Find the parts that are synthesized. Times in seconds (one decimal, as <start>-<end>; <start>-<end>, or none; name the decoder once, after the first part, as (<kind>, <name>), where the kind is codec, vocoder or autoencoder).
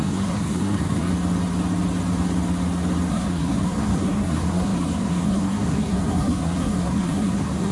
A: 0.0-1.1 (codec, SNAC); 3.1-7.7